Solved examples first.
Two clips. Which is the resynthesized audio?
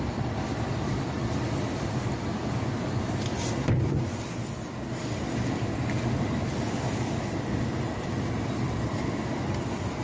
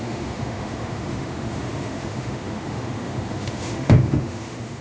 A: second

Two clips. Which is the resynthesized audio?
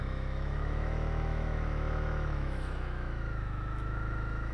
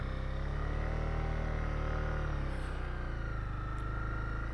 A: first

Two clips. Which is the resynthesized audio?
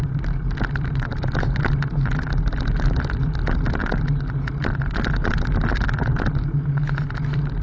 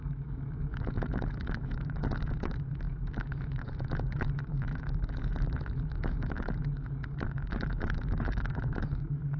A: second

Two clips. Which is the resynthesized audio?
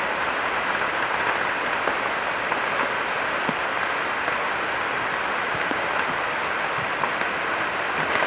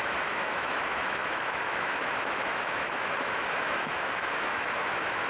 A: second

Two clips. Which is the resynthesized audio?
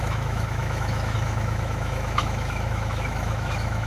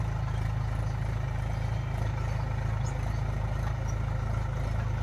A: first